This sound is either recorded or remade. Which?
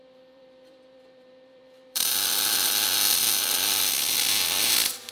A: remade